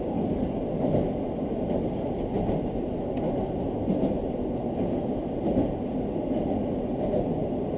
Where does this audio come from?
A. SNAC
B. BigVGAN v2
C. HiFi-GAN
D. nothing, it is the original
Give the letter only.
D